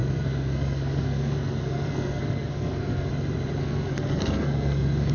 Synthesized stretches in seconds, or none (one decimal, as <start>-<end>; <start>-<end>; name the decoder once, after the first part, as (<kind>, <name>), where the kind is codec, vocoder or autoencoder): 0.0-3.1 (codec, SNAC); 3.6-5.1